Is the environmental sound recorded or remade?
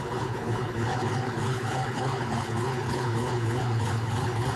remade